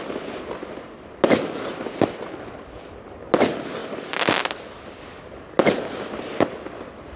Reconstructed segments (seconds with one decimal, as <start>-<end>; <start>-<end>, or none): none